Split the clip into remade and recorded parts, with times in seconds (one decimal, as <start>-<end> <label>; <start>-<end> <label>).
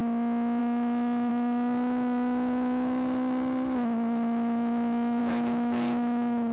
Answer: 0.0-0.6 recorded; 0.6-6.5 remade